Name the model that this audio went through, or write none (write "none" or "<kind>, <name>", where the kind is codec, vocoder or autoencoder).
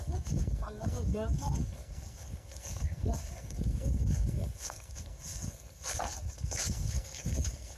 codec, SNAC